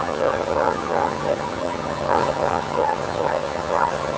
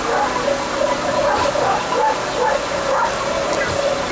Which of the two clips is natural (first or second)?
second